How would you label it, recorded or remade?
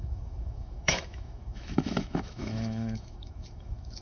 remade